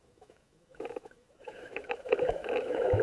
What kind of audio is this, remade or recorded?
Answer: remade